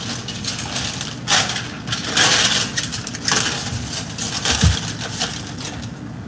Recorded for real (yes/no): yes